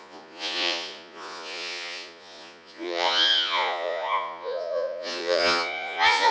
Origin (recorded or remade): remade